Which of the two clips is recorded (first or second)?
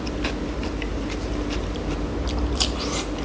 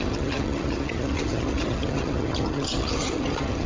first